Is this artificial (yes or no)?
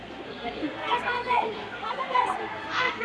yes